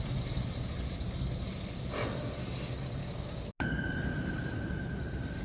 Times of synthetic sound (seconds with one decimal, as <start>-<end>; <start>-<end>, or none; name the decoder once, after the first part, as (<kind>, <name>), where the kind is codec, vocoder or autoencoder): 3.0-3.5 (codec, DAC)